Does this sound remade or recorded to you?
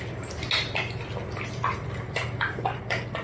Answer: recorded